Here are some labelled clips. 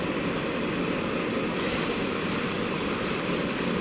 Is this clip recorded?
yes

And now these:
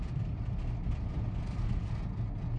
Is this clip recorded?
yes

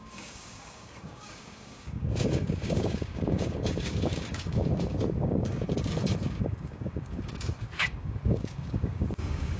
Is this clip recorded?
no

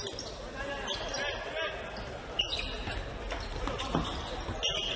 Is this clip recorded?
yes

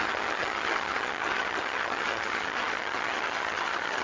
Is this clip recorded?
no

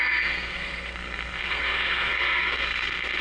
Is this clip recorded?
no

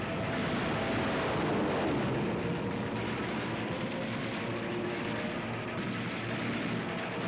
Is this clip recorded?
yes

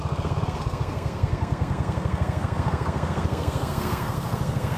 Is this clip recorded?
no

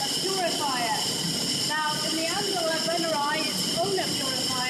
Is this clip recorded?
yes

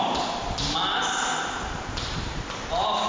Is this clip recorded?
yes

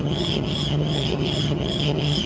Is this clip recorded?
no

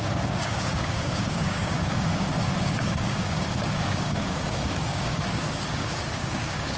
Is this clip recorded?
no